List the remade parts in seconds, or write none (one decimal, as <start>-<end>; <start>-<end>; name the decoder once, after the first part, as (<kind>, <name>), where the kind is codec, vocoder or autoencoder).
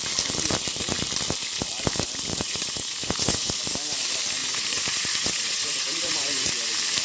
2.3-3.5 (vocoder, Vocos); 4.4-6.5